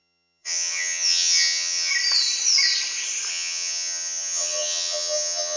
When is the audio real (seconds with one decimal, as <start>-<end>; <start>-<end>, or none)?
1.9-3.3